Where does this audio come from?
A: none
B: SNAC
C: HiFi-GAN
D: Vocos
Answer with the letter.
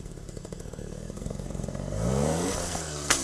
B